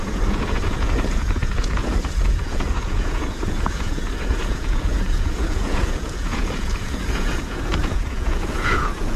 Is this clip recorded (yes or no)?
no